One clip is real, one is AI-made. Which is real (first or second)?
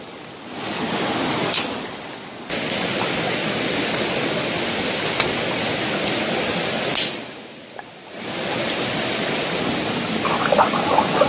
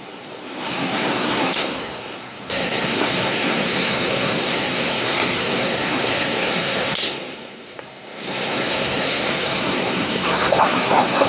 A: first